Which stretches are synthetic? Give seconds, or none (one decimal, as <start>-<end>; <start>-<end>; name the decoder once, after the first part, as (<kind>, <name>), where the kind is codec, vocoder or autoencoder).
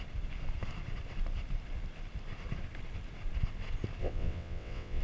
4.0-5.0 (vocoder, WaveNeXt)